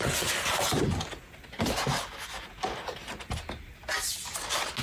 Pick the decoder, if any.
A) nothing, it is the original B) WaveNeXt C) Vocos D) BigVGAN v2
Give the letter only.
A